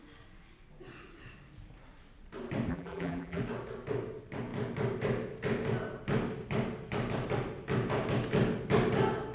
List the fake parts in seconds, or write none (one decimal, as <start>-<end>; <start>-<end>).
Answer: 2.7-3.4